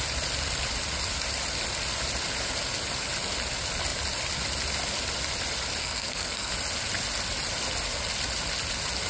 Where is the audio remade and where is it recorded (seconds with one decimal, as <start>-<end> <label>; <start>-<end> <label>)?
0.0-5.8 recorded; 5.8-6.5 remade; 6.5-9.1 recorded